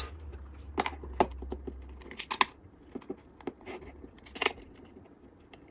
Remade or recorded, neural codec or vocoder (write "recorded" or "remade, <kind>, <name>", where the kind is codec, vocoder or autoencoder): recorded